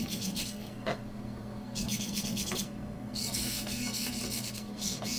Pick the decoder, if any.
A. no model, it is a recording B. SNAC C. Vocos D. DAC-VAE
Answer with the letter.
B